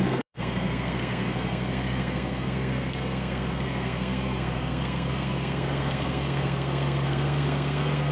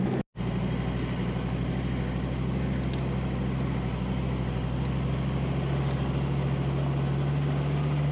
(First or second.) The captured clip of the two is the second